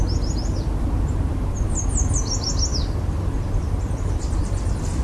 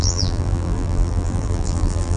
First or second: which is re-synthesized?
second